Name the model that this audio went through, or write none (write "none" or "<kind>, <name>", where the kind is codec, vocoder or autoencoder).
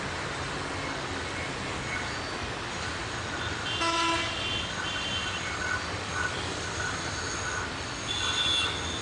none